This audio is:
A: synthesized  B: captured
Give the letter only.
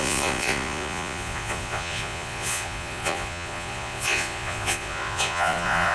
A